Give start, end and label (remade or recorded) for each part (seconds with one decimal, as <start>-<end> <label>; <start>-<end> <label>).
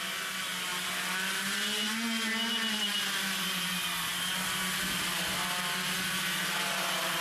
0.0-7.2 recorded